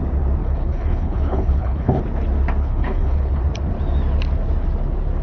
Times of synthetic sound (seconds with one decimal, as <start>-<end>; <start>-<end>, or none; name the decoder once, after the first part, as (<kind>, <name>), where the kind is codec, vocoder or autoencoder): 0.4-2.0 (codec, HILCodec); 2.6-3.4